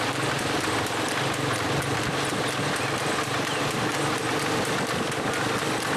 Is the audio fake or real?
fake